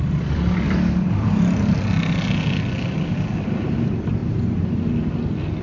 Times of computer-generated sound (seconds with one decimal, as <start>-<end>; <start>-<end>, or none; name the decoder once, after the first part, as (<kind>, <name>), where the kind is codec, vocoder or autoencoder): 0.0-4.2 (vocoder, BigVGAN v2)